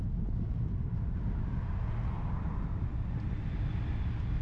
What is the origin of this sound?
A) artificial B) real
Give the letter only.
B